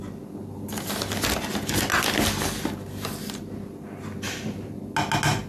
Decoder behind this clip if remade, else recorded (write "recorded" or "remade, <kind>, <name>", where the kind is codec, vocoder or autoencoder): recorded